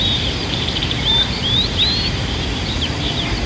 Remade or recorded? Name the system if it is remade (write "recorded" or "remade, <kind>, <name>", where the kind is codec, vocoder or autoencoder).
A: remade, vocoder, BigVGAN v2